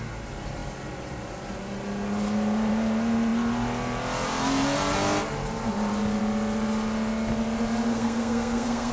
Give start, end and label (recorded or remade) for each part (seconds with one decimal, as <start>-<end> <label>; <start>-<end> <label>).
0.0-7.9 recorded; 7.9-8.9 remade